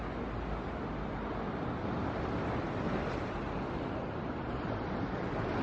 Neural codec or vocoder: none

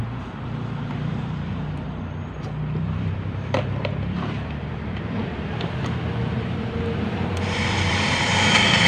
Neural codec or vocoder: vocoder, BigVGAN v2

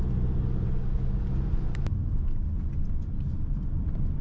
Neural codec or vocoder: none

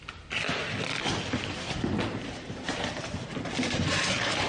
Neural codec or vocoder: none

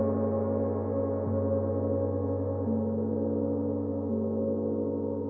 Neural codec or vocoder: none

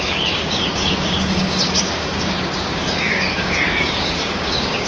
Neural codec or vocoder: codec, DAC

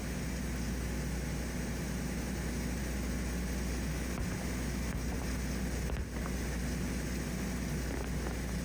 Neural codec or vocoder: none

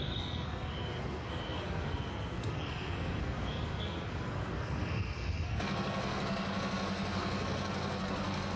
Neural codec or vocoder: codec, SNAC